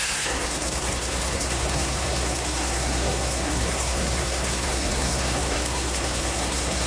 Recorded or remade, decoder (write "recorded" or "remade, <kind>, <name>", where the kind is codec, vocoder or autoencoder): remade, codec, SNAC